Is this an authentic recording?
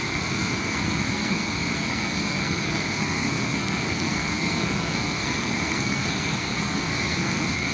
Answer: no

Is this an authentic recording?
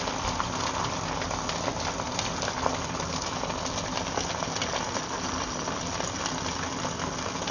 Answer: yes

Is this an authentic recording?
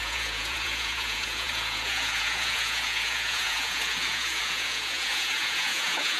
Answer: no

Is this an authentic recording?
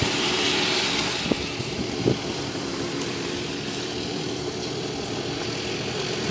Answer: no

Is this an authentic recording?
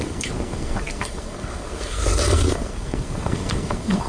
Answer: no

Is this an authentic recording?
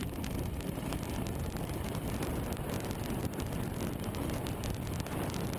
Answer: no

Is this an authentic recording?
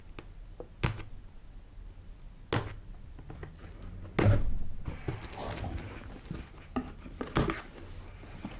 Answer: yes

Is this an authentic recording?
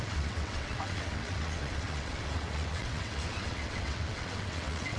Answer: no